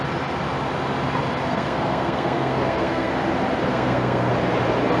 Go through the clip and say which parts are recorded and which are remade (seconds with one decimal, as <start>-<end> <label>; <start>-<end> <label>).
0.0-1.5 recorded; 1.5-3.1 remade; 3.1-3.7 recorded; 3.7-4.3 remade; 4.3-5.0 recorded